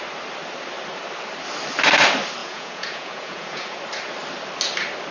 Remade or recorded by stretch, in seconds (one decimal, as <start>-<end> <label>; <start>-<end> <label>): 0.0-2.4 recorded; 2.4-3.8 remade; 3.8-5.1 recorded